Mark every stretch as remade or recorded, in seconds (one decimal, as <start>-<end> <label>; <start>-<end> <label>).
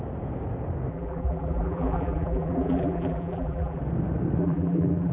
0.0-0.9 recorded; 0.9-3.8 remade; 3.8-4.4 recorded; 4.4-5.1 remade